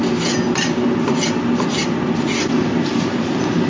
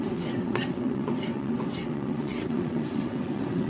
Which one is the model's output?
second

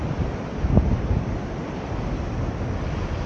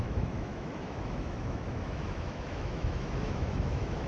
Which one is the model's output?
second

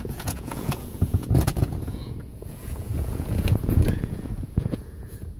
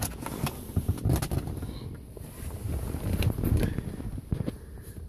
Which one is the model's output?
first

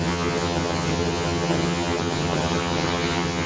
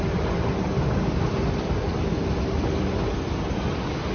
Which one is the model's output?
first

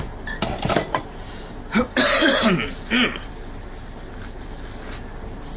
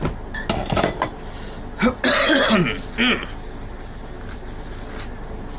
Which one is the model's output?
first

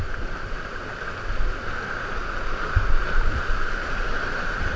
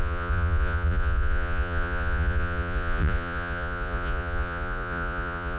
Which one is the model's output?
second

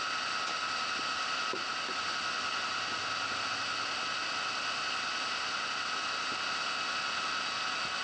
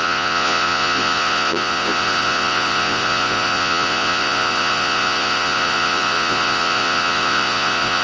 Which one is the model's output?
second